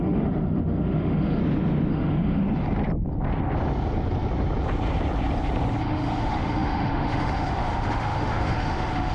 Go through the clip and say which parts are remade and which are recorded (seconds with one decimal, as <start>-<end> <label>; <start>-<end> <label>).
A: 0.0-1.4 remade; 1.4-1.9 recorded; 1.9-2.4 remade; 2.4-5.8 recorded; 5.8-9.1 remade